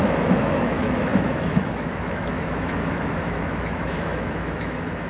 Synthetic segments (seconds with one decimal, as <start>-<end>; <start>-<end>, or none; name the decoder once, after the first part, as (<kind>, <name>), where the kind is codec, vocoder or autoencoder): 0.0-5.1 (autoencoder, DAC-VAE)